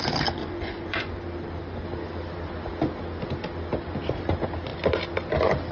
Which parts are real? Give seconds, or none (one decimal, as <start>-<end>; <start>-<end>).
0.0-0.4; 1.1-5.7